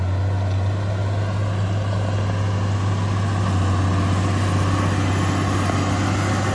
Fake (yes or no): no